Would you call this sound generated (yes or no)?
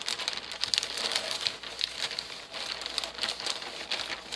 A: no